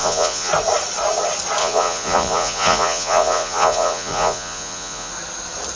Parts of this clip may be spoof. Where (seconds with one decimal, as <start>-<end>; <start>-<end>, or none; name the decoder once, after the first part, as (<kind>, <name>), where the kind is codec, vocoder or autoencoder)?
0.0-0.5 (vocoder, Vocos); 1.6-5.1